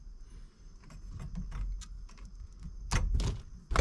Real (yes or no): yes